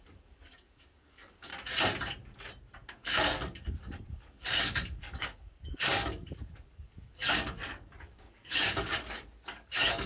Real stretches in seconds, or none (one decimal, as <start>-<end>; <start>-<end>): 1.5-2.9